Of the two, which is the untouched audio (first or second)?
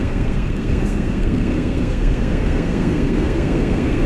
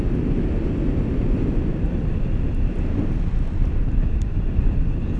second